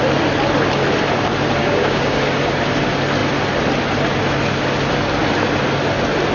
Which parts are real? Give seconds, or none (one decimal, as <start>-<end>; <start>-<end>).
0.0-1.6; 2.2-6.3